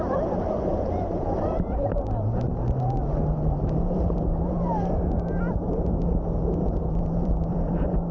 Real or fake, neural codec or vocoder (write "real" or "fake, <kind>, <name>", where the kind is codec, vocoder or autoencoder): fake, vocoder, BigVGAN v2